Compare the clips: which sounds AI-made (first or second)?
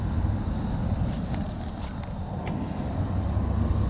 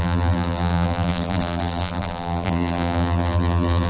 second